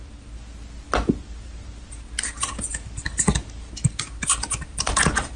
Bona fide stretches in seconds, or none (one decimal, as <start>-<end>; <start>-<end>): 0.0-5.4